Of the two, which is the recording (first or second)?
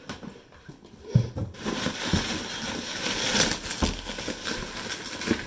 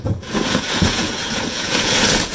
first